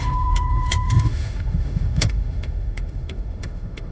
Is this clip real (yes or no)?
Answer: no